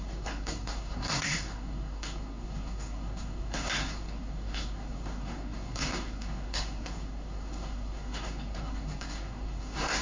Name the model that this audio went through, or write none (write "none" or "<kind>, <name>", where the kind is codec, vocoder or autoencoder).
codec, SNAC